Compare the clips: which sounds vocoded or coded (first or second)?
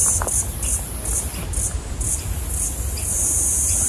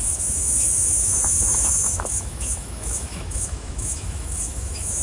second